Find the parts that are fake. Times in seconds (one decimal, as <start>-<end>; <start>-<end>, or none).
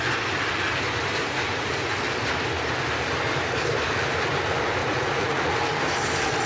1.2-1.9; 4.8-5.5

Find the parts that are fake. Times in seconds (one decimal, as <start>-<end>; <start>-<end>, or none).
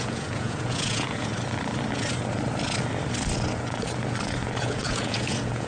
0.0-1.3; 4.6-5.7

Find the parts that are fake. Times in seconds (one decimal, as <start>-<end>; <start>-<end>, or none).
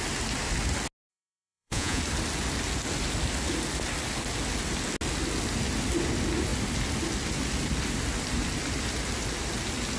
1.1-2.0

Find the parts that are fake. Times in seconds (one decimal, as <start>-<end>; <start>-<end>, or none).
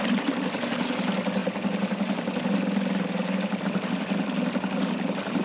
none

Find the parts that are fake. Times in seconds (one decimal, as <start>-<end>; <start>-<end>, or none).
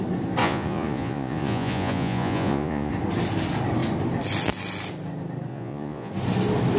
0.4-2.9; 5.5-6.1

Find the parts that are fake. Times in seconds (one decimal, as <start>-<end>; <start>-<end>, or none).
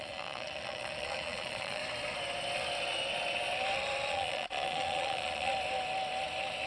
0.0-1.8; 4.1-5.5